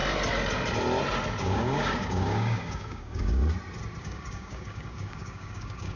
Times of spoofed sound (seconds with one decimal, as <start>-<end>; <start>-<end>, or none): 1.4-3.4; 4.0-6.0